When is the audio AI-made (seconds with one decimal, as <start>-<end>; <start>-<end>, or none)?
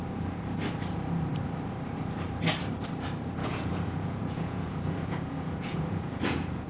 3.4-6.7